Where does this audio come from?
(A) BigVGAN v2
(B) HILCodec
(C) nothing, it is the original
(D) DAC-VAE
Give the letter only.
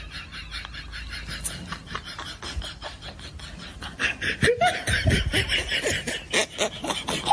C